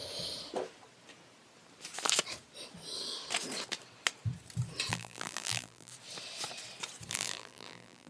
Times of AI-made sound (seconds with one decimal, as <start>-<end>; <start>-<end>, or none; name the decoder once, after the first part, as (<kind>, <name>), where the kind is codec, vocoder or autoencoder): 4.9-5.9 (vocoder, BigVGAN v2); 7.1-8.1

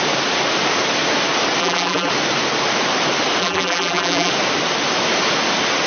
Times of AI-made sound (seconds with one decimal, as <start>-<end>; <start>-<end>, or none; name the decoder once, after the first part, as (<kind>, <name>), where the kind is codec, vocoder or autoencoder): 1.6-2.1 (vocoder, BigVGAN v2); 3.4-4.3

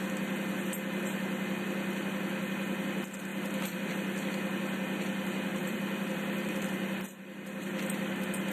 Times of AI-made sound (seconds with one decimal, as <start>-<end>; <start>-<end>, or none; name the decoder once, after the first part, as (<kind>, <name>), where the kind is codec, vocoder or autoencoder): 3.3-3.9 (vocoder, BigVGAN v2); 5.6-6.6

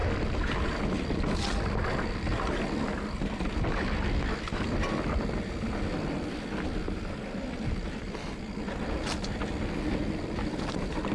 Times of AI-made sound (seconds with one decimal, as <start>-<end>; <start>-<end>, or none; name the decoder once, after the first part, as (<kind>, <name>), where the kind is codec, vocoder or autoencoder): none

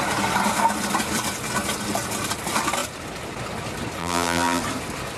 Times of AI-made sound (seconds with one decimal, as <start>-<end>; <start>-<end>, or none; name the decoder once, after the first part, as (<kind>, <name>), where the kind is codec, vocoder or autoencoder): 4.0-4.6 (vocoder, BigVGAN v2)